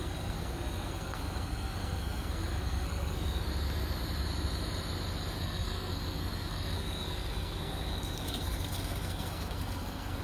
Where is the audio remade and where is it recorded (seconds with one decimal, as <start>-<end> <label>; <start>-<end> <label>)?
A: 0.0-3.4 remade; 3.4-5.4 recorded; 5.4-10.2 remade